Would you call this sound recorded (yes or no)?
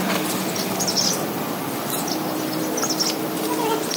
yes